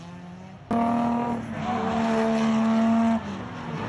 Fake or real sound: real